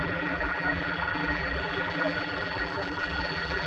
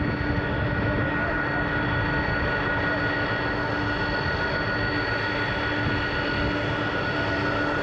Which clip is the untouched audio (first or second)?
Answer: second